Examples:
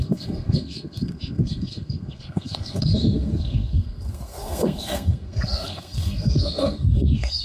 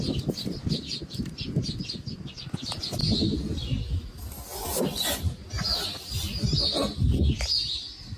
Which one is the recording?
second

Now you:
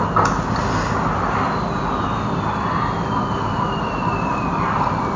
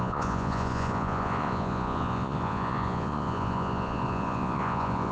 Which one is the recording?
first